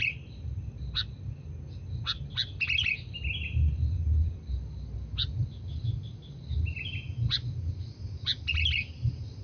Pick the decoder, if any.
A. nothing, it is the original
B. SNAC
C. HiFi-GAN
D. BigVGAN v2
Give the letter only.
A